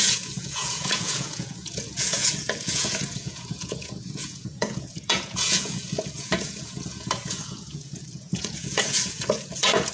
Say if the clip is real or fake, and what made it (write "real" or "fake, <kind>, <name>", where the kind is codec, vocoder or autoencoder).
fake, vocoder, Vocos